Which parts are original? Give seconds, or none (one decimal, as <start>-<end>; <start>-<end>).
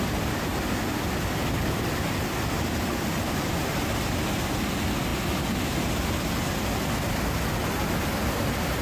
0.0-0.5; 3.5-8.8